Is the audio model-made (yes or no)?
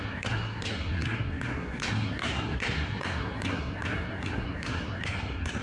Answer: yes